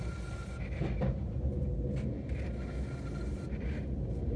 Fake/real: real